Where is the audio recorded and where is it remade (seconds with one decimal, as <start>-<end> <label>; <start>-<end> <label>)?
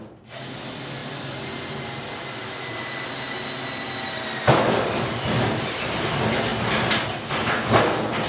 0.0-8.3 recorded